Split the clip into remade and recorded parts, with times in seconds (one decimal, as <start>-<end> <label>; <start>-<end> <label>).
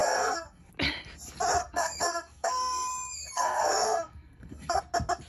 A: 0.0-0.7 remade; 0.7-1.6 recorded; 1.6-4.8 remade; 4.8-5.3 recorded